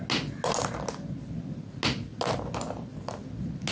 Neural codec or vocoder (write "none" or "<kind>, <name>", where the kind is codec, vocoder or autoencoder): none